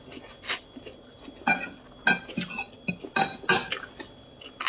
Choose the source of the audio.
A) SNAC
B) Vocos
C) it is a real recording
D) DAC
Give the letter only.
C